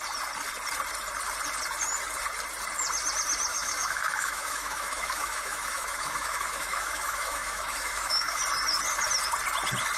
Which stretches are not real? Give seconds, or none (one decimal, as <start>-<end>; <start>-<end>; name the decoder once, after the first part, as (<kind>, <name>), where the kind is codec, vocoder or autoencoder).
3.5-8.4 (autoencoder, DAC-VAE)